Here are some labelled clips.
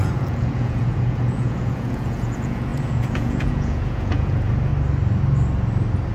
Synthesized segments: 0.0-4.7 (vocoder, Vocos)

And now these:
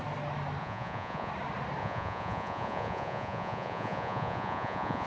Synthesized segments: 0.6-1.3 (vocoder, Vocos); 1.8-5.1

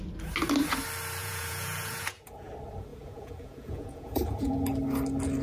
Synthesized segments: 1.2-2.5 (vocoder, Vocos); 2.9-4.5

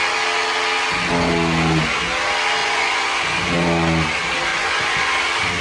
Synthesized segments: 2.6-3.4 (vocoder, Vocos); 4.5-5.1

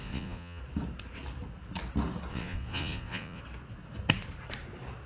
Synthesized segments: 0.0-0.6 (vocoder, Vocos); 2.3-3.4

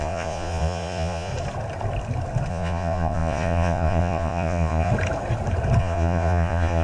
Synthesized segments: 0.0-1.3 (vocoder, Vocos); 2.5-4.9; 5.8-6.8

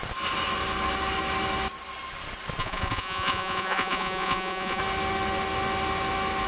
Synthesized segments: 2.6-4.8 (vocoder, Vocos)